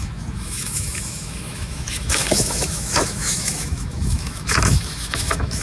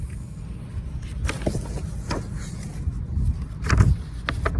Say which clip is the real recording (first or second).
second